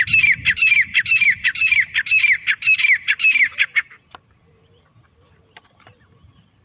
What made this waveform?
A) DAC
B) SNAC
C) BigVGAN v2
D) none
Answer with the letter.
D